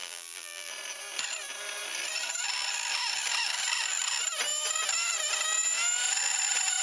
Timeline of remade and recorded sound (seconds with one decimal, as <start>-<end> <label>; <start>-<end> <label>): 0.0-0.7 remade; 0.7-6.8 recorded